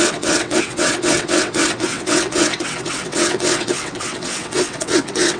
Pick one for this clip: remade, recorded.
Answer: remade